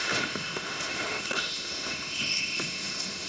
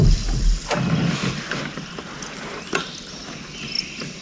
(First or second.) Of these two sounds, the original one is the second